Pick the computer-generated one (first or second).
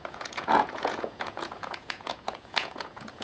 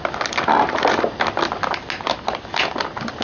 first